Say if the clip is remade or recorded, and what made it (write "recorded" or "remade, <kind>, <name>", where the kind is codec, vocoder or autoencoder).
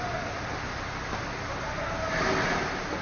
recorded